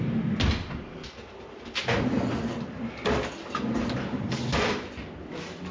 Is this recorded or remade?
recorded